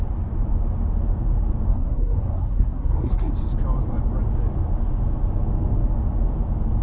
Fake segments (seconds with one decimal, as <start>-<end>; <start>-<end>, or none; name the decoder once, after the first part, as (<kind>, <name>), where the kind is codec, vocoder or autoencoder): 1.7-3.3 (codec, SNAC)

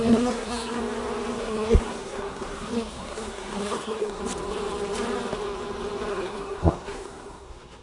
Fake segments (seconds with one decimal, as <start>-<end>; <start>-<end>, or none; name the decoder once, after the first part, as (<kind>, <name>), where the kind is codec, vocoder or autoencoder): 0.0-0.8 (codec, SNAC); 1.4-4.2; 6.1-7.8

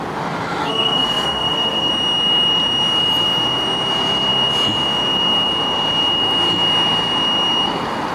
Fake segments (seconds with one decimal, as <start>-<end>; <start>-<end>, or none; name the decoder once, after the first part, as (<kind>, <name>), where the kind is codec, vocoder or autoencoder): 0.6-1.9 (codec, SNAC)

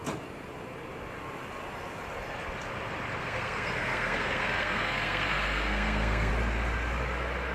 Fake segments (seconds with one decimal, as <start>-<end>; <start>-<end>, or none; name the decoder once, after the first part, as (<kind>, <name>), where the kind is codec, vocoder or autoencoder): 3.2-6.3 (codec, SNAC)

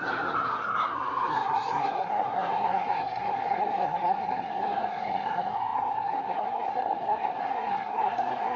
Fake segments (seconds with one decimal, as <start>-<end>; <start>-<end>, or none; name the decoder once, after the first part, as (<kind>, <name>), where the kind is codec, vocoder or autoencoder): 0.0-8.6 (codec, SNAC)

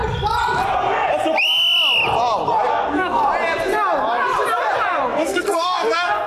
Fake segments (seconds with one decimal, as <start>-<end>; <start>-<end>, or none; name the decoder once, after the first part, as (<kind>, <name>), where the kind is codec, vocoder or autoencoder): 2.7-3.3 (codec, SNAC); 5.1-6.3